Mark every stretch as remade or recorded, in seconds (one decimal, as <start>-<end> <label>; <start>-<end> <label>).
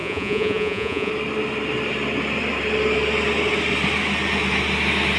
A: 0.0-1.1 remade; 1.1-5.2 recorded